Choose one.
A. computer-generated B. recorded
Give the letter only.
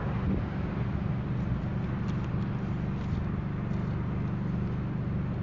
B